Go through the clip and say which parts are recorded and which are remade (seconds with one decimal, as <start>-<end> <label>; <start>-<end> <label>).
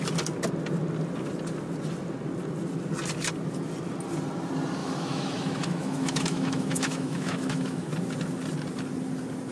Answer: 0.0-4.8 recorded; 4.8-7.9 remade; 7.9-9.5 recorded